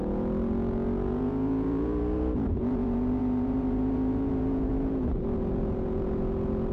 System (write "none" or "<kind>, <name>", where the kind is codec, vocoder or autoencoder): vocoder, Vocos